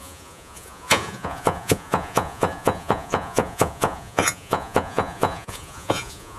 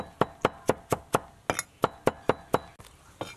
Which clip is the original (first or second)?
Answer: second